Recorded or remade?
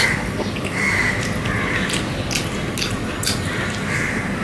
recorded